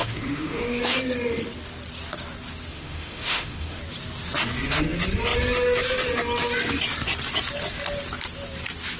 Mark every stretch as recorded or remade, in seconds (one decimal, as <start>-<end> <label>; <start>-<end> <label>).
0.0-0.8 remade; 0.8-2.7 recorded; 2.7-3.8 remade; 3.8-9.0 recorded